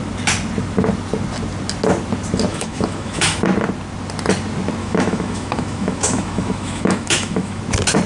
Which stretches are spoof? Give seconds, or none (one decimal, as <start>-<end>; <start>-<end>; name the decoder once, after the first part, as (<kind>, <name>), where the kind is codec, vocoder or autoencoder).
2.5-3.4 (autoencoder, DAC-VAE); 4.8-7.6